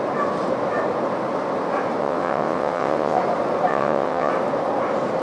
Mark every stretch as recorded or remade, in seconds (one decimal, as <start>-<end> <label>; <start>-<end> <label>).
0.0-2.0 recorded; 2.0-3.2 remade; 3.2-3.7 recorded; 3.7-4.3 remade; 4.3-5.2 recorded